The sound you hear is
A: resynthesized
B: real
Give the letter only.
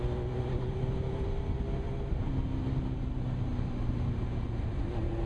B